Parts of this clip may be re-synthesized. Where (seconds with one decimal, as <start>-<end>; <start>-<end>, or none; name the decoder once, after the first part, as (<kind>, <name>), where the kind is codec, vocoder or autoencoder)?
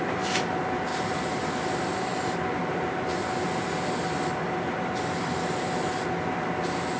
0.9-1.8 (vocoder, BigVGAN v2)